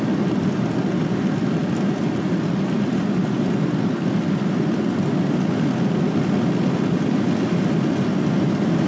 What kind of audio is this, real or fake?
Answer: real